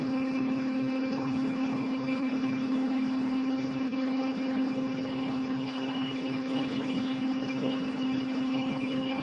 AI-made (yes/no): yes